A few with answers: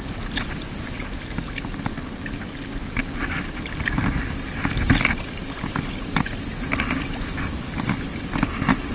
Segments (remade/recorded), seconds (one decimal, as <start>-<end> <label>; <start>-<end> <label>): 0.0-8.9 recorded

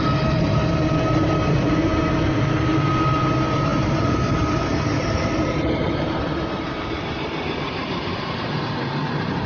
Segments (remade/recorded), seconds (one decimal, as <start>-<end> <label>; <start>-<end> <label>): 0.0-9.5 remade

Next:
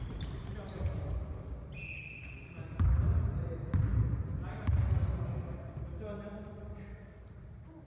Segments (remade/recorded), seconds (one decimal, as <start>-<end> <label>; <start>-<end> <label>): 0.0-7.9 recorded

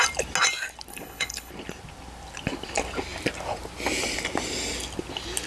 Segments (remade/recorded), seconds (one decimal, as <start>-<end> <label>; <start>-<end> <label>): 0.0-0.9 recorded; 0.9-1.5 remade; 1.5-5.5 recorded

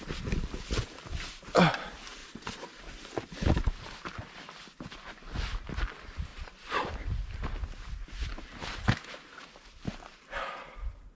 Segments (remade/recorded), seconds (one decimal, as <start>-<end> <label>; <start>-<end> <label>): 0.0-2.2 recorded; 2.2-2.8 remade; 2.8-6.3 recorded; 6.3-6.9 remade; 6.9-11.1 recorded

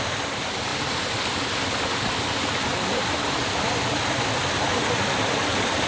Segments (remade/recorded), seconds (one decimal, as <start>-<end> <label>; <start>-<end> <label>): 0.0-4.7 recorded; 4.7-5.9 remade

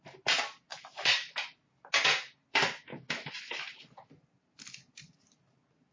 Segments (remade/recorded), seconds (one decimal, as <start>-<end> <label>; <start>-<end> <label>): 0.0-0.7 recorded; 0.7-1.3 remade; 1.3-2.9 recorded; 2.9-3.7 remade; 3.7-5.9 recorded